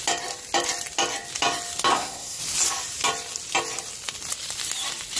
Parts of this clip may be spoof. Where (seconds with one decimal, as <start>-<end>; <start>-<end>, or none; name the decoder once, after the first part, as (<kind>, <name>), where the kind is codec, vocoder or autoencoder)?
1.9-2.4 (codec, SNAC)